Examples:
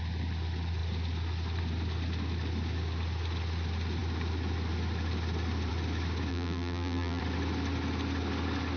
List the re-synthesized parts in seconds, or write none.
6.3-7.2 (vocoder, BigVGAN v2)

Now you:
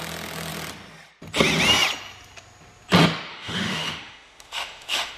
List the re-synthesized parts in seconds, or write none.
3.3-5.2 (autoencoder, DAC-VAE)